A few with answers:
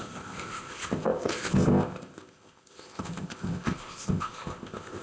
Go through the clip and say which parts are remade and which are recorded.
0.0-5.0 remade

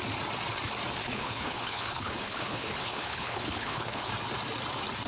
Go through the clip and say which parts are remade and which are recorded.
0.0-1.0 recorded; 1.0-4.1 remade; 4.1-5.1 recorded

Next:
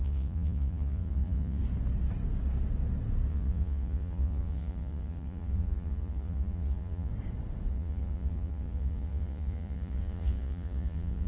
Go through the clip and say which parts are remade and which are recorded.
0.0-1.6 remade; 1.6-3.3 recorded; 3.3-7.1 remade; 7.1-7.7 recorded; 7.7-11.3 remade

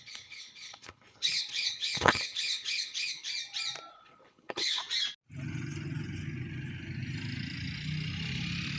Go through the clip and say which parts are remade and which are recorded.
0.0-3.3 remade; 3.3-3.9 recorded; 3.9-4.8 remade; 4.8-8.8 recorded